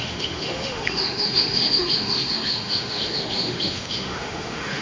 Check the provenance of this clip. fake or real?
fake